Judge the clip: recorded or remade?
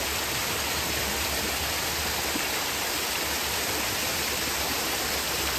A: recorded